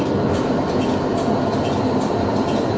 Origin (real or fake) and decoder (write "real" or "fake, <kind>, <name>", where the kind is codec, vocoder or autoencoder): real